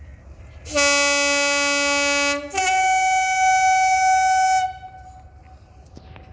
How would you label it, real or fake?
real